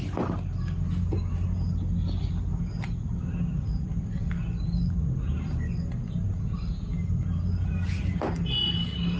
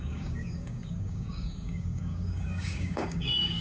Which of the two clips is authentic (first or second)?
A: first